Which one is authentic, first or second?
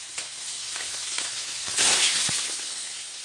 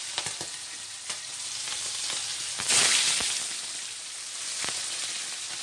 second